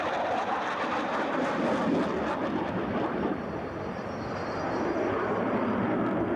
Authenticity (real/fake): real